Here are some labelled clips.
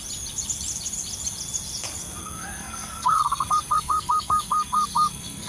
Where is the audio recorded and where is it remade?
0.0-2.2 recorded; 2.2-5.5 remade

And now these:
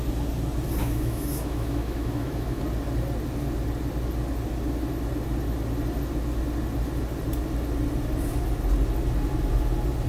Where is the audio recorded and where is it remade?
0.0-0.8 recorded; 0.8-2.6 remade; 2.6-10.1 recorded